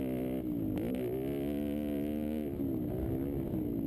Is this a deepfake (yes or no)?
no